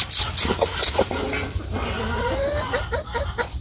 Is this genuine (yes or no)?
yes